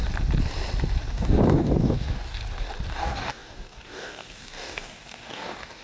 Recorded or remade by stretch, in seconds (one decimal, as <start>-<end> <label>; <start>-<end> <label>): 0.0-1.1 recorded; 1.1-2.4 remade; 2.4-2.9 recorded; 2.9-5.8 remade